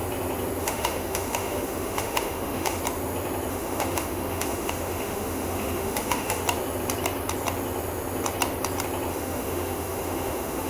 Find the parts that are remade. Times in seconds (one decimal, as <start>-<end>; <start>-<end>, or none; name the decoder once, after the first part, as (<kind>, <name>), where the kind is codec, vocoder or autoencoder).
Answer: 0.6-2.8 (autoencoder, DAC-VAE); 3.5-6.4; 9.1-10.7